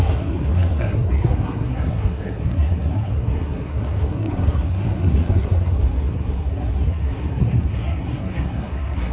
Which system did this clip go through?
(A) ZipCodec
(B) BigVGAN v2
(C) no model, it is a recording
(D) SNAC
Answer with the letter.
D